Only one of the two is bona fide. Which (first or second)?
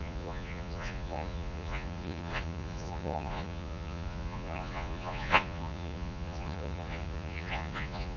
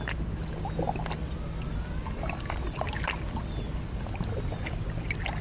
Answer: second